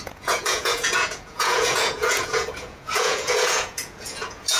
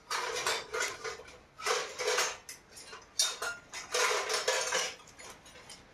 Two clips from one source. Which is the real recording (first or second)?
second